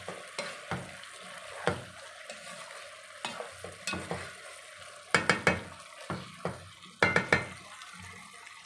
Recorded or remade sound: recorded